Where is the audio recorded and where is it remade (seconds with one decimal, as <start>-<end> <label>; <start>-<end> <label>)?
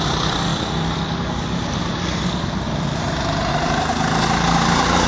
0.0-5.1 recorded